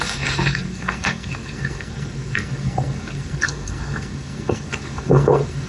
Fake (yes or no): yes